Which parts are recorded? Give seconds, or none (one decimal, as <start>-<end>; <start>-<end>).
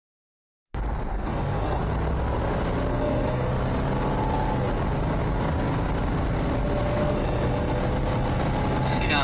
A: 0.0-1.1; 1.8-2.9; 3.5-7.0; 7.8-9.2